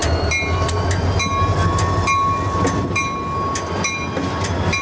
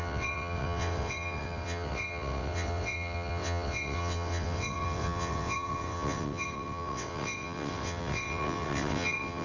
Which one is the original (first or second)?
first